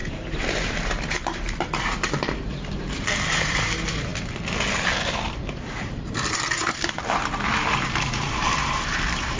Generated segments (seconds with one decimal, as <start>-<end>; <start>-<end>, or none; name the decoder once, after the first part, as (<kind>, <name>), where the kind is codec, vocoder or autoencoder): 0.0-4.1 (vocoder, BigVGAN v2); 5.3-9.4